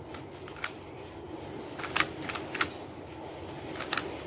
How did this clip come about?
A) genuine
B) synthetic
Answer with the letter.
A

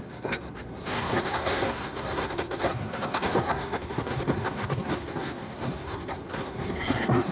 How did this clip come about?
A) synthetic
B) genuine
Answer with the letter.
A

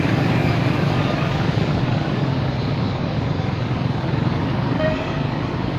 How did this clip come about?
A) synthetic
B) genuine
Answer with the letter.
A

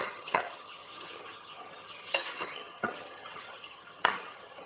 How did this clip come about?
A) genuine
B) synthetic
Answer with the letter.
B